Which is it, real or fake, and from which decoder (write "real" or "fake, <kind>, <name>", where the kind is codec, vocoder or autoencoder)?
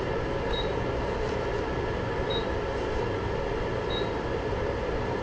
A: fake, vocoder, BigVGAN v2